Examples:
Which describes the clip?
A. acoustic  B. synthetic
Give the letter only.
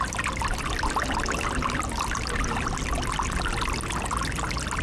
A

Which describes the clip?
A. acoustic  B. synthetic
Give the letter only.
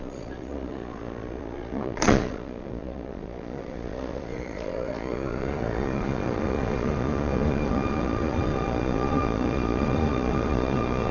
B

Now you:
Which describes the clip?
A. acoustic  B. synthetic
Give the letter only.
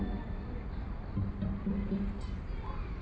A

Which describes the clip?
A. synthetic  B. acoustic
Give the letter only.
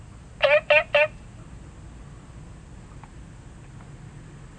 B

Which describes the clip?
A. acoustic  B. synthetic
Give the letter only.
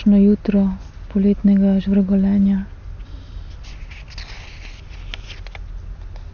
A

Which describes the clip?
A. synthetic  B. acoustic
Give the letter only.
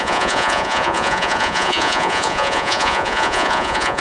A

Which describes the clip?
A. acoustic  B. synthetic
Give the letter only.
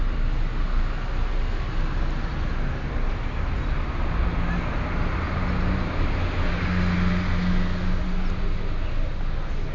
A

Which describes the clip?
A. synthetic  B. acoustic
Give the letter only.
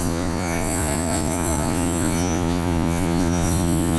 A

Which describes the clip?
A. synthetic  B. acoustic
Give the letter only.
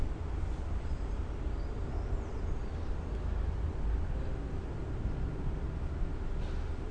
B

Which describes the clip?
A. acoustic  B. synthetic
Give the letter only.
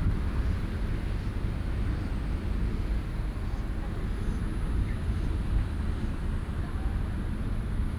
A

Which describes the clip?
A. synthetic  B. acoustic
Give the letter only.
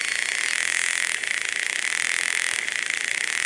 B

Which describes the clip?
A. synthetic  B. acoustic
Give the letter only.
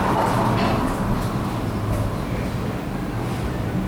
B